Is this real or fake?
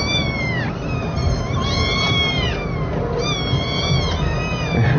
real